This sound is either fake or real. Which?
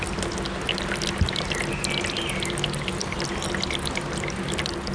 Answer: real